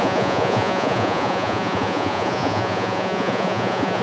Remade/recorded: remade